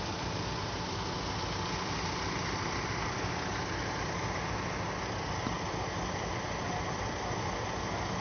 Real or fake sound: real